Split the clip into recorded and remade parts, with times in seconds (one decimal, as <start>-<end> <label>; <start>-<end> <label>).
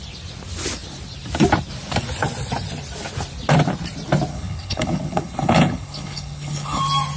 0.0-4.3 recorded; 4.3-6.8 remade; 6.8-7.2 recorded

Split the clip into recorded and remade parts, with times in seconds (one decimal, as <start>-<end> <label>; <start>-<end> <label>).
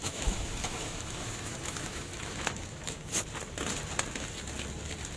0.0-3.1 remade; 3.1-5.2 recorded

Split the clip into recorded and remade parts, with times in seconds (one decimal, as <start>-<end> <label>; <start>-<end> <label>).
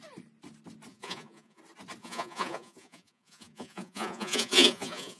0.0-0.9 recorded; 0.9-1.6 remade; 1.6-2.0 recorded; 2.0-5.2 remade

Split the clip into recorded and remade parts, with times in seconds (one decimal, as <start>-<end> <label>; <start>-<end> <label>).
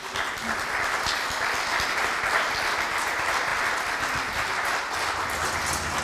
0.0-6.0 recorded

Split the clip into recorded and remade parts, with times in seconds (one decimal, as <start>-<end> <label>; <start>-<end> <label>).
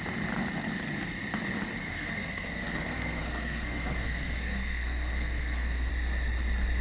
0.0-1.8 recorded; 1.8-5.9 remade; 5.9-6.8 recorded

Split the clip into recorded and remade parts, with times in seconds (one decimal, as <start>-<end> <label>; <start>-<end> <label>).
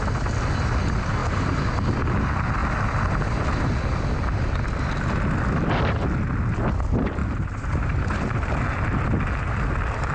0.0-1.2 recorded; 1.2-1.8 remade; 1.8-7.2 recorded; 7.2-8.5 remade; 8.5-10.1 recorded